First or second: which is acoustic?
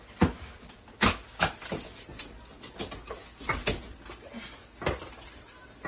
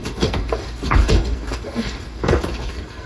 first